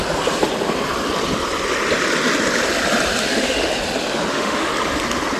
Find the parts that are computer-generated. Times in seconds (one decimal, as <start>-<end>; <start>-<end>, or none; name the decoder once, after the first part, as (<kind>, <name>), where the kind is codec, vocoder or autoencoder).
3.2-3.7 (autoencoder, DAC-VAE); 4.3-4.7